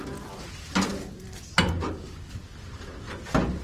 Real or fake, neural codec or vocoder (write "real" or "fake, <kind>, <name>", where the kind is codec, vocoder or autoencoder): real